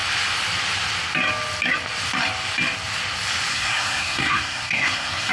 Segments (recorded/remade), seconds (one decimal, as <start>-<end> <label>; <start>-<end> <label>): 0.0-3.5 recorded; 3.5-5.3 remade